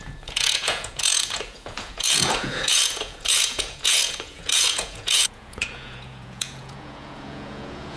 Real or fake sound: fake